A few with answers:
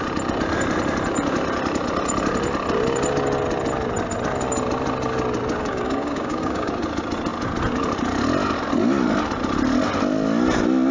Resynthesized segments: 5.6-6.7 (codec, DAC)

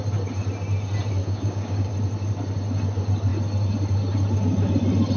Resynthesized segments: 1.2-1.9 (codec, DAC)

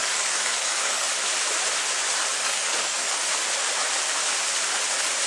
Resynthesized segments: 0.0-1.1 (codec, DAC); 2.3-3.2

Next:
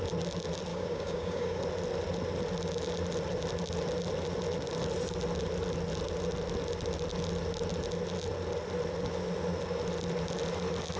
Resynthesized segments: 0.7-1.6 (codec, DAC)

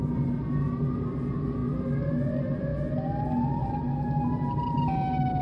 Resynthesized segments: none

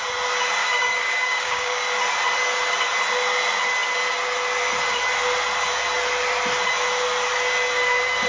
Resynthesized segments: 0.6-1.8 (codec, DAC)

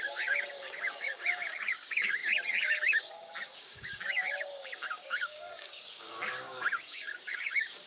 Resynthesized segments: 0.0-7.9 (codec, DAC)

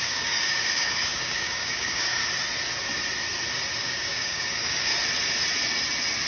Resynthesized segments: 0.0-2.2 (codec, DAC); 3.8-4.9